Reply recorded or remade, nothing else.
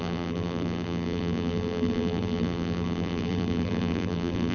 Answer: remade